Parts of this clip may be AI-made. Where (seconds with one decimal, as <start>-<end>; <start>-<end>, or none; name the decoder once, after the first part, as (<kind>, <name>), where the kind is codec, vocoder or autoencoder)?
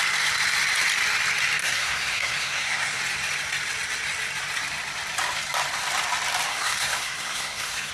1.6-3.0 (codec, SNAC); 6.5-7.9